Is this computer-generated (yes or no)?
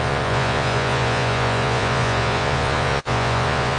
yes